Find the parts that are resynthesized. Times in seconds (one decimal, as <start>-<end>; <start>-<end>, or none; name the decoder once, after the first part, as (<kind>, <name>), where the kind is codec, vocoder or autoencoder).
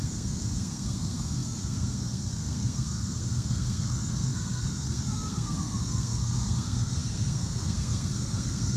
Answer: 0.0-8.8 (codec, SNAC)